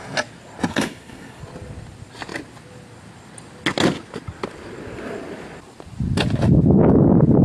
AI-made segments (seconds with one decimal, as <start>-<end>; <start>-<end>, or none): 0.7-1.4

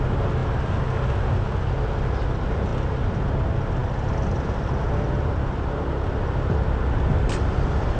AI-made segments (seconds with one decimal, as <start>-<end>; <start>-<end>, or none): none

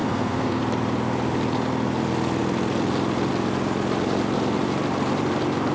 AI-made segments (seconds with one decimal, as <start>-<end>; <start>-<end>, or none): 0.0-0.6